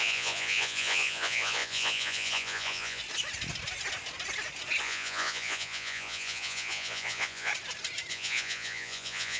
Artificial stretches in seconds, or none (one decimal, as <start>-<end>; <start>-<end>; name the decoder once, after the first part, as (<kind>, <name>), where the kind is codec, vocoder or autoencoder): 0.0-3.0 (vocoder, Vocos); 4.8-7.5; 8.1-9.4